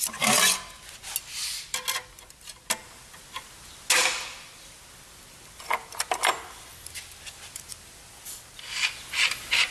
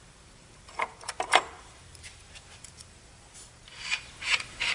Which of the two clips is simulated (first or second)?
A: second